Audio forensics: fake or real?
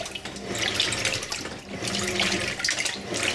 real